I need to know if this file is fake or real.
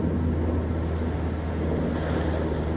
real